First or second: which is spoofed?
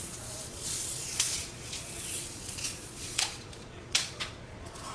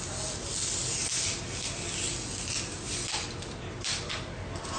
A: first